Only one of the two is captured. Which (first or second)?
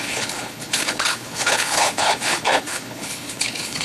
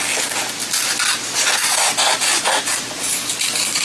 second